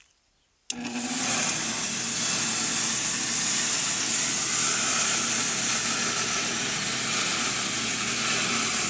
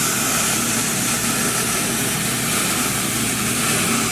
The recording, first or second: first